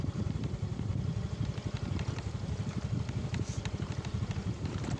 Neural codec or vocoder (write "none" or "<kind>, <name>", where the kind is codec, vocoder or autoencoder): vocoder, BigVGAN v2